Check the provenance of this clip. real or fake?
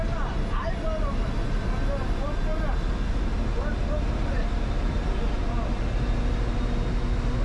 real